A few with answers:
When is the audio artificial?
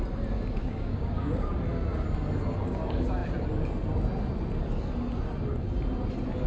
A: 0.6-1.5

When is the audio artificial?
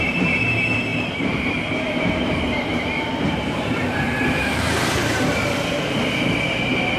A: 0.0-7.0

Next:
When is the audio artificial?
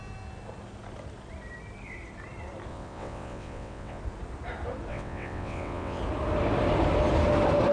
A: 2.7-4.0; 4.9-6.0